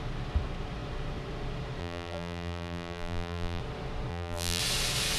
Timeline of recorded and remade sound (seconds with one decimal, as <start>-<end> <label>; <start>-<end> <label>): 0.0-1.8 recorded; 1.8-3.6 remade; 3.6-4.1 recorded; 4.1-4.6 remade; 4.6-5.2 recorded